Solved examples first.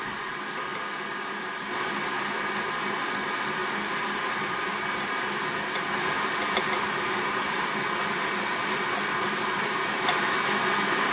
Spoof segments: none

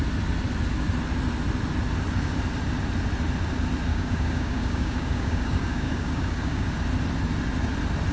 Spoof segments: 3.9-6.7 (codec, DAC)

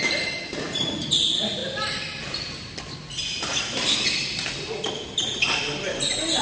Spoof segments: none

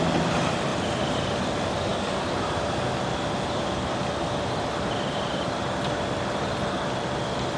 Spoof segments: 1.9-3.0 (codec, DAC)

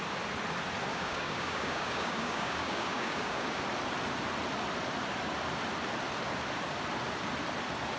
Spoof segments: 0.9-3.6 (codec, DAC)

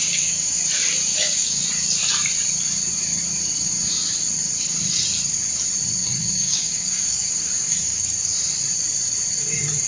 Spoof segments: 0.0-0.6 (codec, DAC); 1.1-1.6; 6.0-8.0

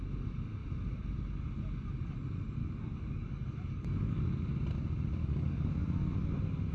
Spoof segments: 2.6-4.2 (codec, DAC); 5.2-5.7

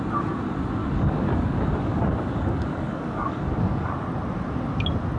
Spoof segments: 0.8-3.9 (codec, DAC)